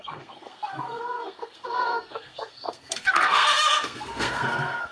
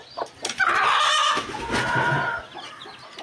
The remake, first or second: first